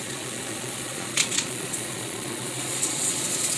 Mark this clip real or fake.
fake